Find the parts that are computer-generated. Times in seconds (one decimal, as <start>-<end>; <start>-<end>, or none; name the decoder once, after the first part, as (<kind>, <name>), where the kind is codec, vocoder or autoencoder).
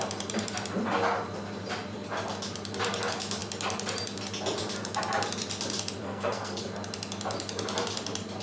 6.0-6.6 (codec, SNAC)